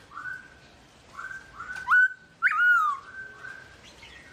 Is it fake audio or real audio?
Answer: real